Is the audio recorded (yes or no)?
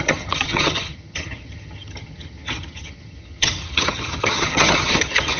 no